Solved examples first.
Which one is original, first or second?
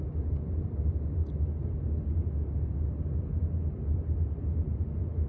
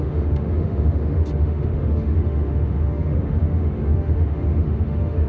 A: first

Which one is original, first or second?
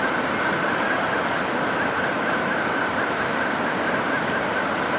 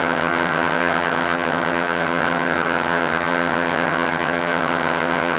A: first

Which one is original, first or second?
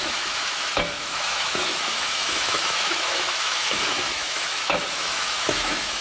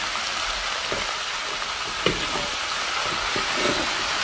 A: second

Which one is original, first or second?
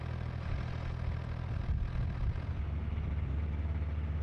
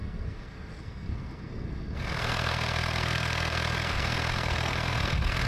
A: first